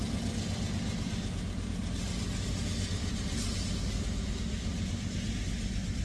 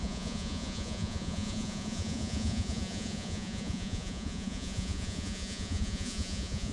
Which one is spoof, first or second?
second